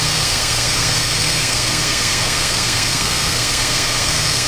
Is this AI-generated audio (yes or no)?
yes